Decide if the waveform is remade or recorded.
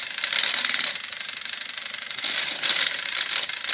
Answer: remade